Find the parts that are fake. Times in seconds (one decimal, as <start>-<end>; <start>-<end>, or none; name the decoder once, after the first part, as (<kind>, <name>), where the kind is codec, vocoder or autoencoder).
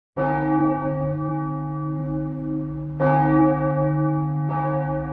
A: 0.6-1.3 (codec, SNAC)